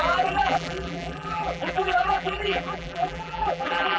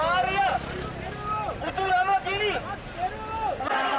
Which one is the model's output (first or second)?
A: first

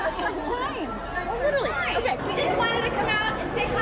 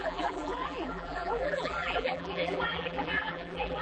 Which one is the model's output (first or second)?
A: second